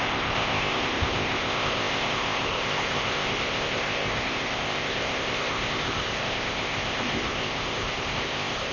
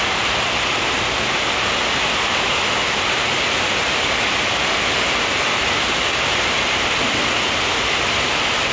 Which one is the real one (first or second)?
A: second